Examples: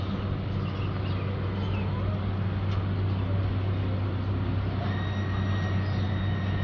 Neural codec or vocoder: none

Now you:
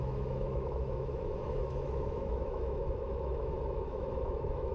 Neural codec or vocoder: autoencoder, DAC-VAE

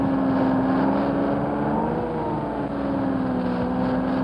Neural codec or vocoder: none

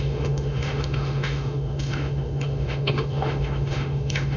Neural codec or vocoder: autoencoder, DAC-VAE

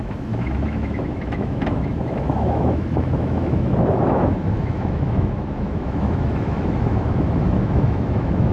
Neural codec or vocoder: autoencoder, DAC-VAE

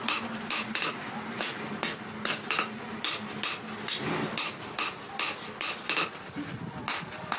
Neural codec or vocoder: none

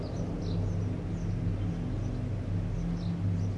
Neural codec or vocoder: none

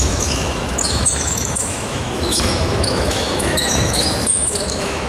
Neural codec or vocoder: autoencoder, DAC-VAE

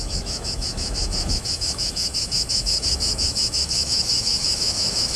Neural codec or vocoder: autoencoder, DAC-VAE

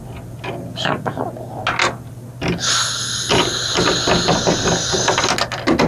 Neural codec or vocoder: none